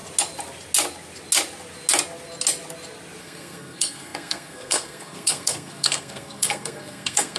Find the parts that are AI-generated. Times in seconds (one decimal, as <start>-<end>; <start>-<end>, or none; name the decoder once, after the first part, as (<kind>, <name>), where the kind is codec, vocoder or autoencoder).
3.2-7.4 (codec, SNAC)